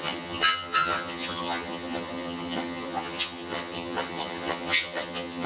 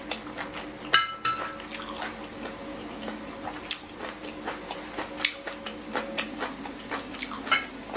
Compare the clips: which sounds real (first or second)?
second